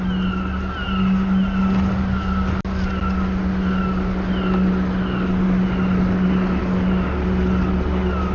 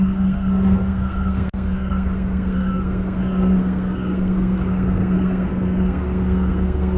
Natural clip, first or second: first